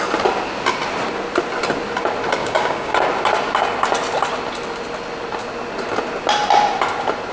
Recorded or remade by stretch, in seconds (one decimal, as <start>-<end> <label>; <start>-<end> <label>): 0.0-2.4 recorded; 2.4-2.9 remade; 2.9-7.3 recorded